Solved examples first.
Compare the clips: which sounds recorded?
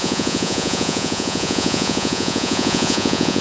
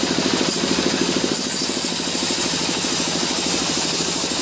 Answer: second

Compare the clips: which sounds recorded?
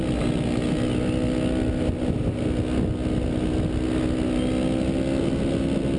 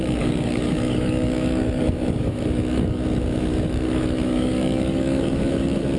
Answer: first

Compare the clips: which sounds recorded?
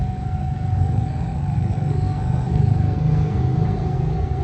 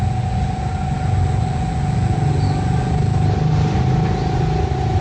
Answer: second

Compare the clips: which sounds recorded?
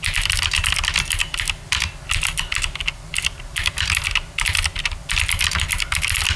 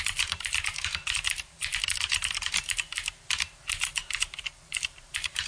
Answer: first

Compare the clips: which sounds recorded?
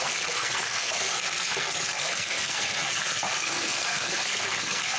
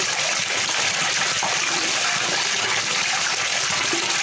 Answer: second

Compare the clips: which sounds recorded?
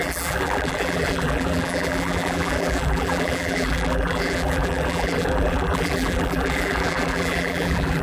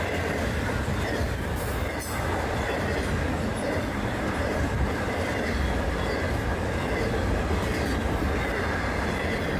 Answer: second